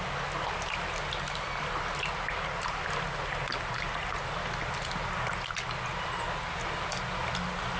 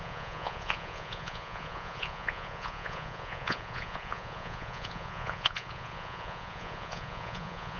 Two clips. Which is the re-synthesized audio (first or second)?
second